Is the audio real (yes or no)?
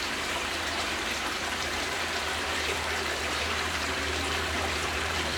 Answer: no